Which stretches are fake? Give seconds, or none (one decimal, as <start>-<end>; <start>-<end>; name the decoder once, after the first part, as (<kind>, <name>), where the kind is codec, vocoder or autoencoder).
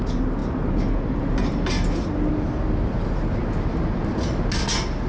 none